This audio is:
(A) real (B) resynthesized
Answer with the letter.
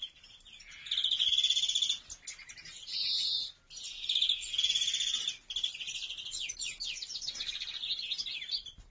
A